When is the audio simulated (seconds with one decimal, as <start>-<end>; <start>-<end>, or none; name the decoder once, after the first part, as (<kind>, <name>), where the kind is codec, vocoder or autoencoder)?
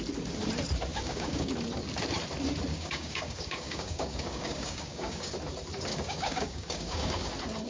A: 0.9-1.5 (codec, DAC); 2.7-5.3; 5.9-7.3